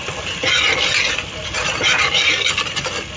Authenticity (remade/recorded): recorded